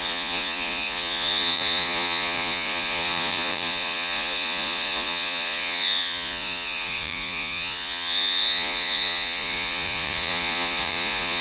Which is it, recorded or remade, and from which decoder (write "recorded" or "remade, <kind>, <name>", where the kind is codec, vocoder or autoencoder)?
remade, vocoder, Vocos